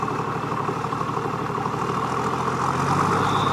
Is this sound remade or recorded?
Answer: recorded